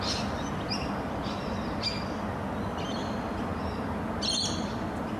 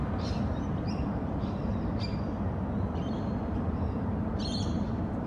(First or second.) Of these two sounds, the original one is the first